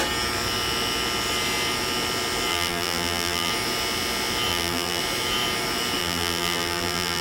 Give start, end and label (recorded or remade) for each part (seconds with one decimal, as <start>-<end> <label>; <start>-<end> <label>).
0.0-2.5 recorded; 2.5-3.5 remade; 3.5-4.5 recorded; 4.5-5.0 remade; 5.0-6.0 recorded; 6.0-7.2 remade